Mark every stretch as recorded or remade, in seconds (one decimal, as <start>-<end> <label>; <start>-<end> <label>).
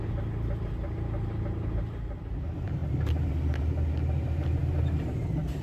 0.0-5.6 recorded